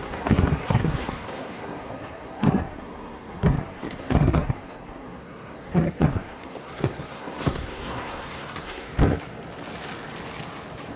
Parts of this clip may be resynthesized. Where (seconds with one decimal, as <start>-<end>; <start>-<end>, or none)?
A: 0.0-8.9